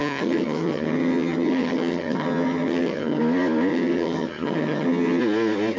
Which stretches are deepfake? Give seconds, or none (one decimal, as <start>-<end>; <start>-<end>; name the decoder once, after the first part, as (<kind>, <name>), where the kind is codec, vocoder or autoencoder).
0.0-3.2 (vocoder, HiFi-GAN); 3.7-5.2